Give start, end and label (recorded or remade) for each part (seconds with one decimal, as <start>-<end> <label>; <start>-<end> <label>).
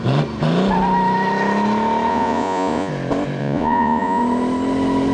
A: 0.0-2.1 recorded; 2.1-2.9 remade; 2.9-3.4 recorded; 3.4-4.2 remade; 4.2-5.1 recorded